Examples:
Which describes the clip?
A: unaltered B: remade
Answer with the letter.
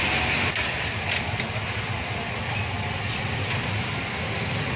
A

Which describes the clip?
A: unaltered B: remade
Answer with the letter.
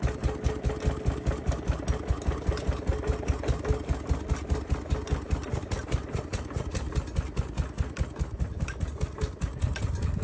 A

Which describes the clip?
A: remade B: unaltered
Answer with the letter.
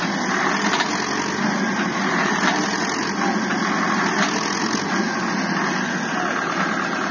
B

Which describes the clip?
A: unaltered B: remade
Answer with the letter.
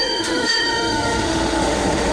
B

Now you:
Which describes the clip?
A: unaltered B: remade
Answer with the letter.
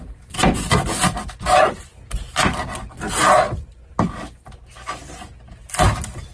A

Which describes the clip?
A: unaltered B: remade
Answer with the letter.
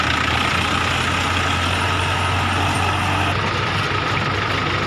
A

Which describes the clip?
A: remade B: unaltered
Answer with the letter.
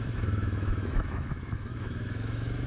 A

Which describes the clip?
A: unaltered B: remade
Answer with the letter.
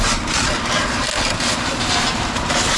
A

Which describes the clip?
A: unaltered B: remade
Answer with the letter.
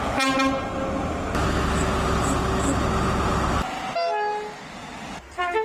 A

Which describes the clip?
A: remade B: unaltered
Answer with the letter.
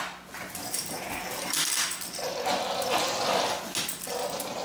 B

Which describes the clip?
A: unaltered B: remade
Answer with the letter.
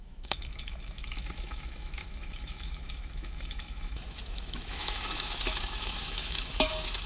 B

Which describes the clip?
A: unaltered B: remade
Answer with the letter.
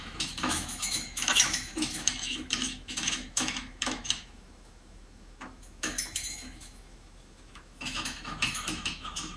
B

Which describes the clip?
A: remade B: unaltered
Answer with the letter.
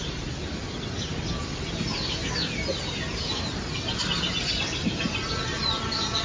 B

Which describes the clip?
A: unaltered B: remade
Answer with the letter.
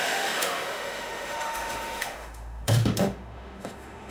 B